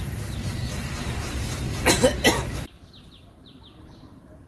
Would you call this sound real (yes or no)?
no